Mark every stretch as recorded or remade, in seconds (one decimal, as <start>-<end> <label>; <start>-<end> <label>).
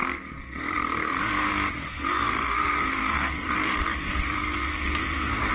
0.0-1.5 remade; 1.5-1.9 recorded; 1.9-5.5 remade